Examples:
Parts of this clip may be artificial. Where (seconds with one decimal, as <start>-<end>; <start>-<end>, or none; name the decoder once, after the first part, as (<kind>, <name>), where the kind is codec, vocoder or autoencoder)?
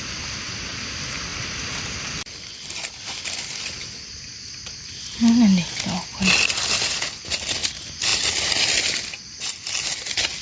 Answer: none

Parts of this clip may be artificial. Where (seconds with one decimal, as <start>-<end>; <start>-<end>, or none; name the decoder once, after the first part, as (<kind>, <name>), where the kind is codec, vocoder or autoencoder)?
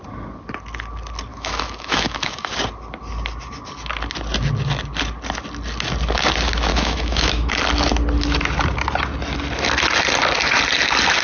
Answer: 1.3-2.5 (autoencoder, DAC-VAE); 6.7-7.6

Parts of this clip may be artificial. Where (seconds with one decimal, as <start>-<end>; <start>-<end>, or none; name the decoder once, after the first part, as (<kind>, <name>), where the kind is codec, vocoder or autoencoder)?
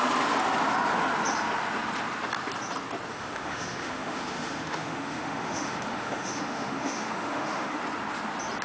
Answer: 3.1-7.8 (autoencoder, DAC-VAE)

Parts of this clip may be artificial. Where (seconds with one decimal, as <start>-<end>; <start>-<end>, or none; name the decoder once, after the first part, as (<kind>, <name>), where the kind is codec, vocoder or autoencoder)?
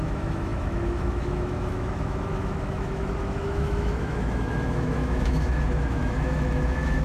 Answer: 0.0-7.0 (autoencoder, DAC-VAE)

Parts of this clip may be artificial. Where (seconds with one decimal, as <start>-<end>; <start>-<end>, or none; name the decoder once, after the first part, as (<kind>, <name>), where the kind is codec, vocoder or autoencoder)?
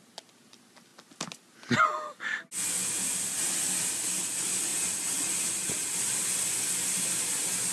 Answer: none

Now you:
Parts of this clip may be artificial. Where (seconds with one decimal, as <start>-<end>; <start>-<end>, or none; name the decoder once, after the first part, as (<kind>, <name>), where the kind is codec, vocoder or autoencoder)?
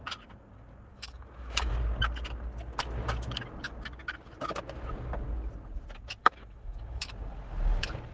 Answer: 0.9-1.7 (autoencoder, DAC-VAE); 6.2-7.1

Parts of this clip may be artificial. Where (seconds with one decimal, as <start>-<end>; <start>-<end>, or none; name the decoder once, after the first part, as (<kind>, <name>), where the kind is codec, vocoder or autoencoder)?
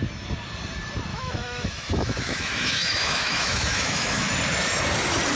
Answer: 1.1-4.3 (autoencoder, DAC-VAE)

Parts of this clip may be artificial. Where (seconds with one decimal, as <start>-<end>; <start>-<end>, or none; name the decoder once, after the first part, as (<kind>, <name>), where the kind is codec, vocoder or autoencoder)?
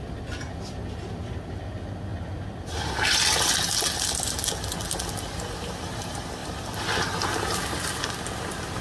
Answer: none